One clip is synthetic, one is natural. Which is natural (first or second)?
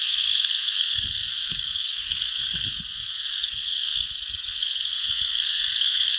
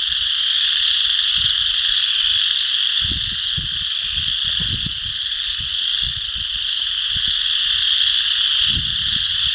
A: second